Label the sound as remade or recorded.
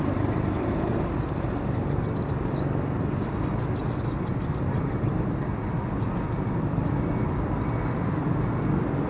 recorded